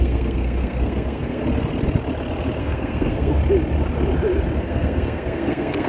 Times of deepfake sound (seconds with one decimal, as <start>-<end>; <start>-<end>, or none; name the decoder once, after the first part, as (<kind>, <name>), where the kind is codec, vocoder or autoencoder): 0.0-1.4 (codec, SNAC); 2.6-3.4; 4.6-5.9